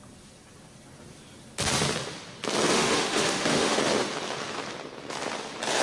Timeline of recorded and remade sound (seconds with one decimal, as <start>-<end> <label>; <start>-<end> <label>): 0.0-2.7 recorded; 2.7-3.8 remade; 3.8-5.8 recorded